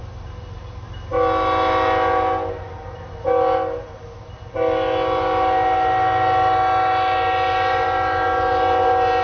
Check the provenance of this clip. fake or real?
real